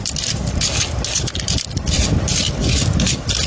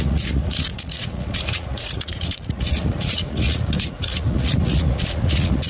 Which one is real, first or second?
first